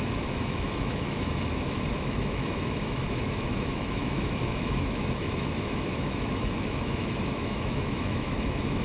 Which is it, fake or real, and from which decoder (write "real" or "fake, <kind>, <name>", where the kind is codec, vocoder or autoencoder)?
fake, autoencoder, DAC-VAE